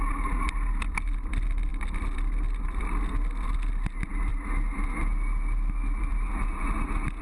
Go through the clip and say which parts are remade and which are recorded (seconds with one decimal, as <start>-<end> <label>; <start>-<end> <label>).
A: 0.0-7.2 recorded